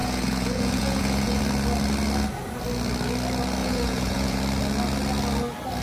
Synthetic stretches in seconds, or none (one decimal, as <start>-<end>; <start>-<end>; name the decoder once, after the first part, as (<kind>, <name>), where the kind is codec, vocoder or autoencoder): 0.0-1.4 (vocoder, Vocos); 3.6-4.4